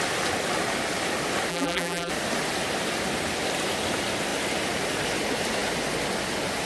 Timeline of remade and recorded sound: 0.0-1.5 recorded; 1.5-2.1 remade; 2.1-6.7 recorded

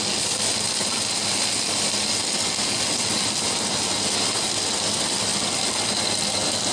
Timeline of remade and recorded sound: 0.0-6.7 recorded

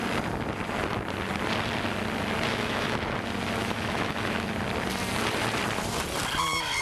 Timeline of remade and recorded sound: 0.0-2.5 recorded; 2.5-3.0 remade; 3.0-3.6 recorded; 3.6-4.5 remade; 4.5-6.8 recorded

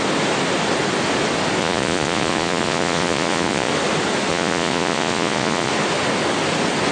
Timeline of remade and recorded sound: 0.0-1.6 recorded; 1.6-3.7 remade; 3.7-4.3 recorded; 4.3-5.7 remade; 5.7-6.9 recorded

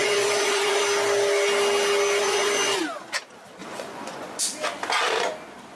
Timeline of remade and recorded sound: 0.0-0.8 remade; 0.8-2.2 recorded; 2.2-2.8 remade; 2.8-3.6 recorded; 3.6-4.4 remade; 4.4-5.8 recorded

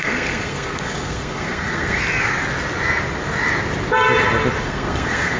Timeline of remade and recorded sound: 0.0-2.0 remade; 2.0-4.6 recorded; 4.6-5.4 remade

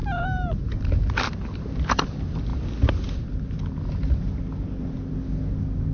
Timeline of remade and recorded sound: 0.0-0.5 remade; 0.5-5.9 recorded

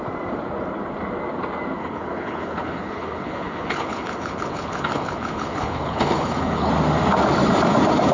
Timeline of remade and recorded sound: 0.0-1.8 recorded; 1.8-6.7 remade; 6.7-8.1 recorded